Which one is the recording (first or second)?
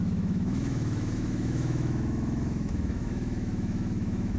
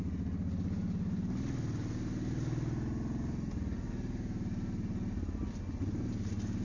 second